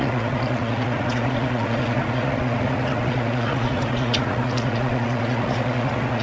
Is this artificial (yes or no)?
yes